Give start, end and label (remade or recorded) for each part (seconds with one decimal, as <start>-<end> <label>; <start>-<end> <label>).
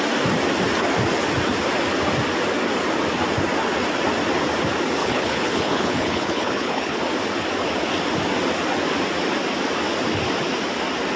0.0-5.0 recorded; 5.0-7.0 remade; 7.0-11.2 recorded